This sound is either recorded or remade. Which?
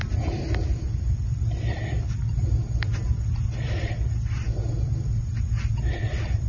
recorded